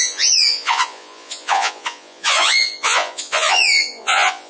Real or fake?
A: fake